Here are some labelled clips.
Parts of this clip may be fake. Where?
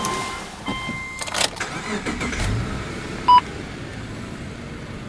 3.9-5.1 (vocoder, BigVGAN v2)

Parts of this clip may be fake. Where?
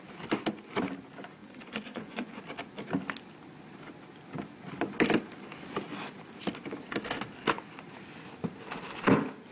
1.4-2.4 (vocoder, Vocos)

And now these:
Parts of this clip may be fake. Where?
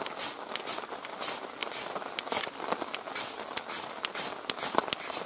none